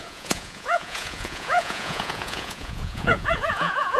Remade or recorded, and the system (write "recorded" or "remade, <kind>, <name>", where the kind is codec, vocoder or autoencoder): remade, vocoder, Vocos